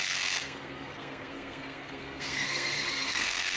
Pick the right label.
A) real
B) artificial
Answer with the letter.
B